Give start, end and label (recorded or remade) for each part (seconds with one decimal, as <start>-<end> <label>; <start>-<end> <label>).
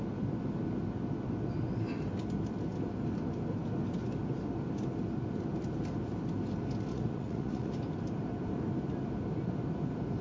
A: 0.0-6.9 recorded; 6.9-7.7 remade; 7.7-10.2 recorded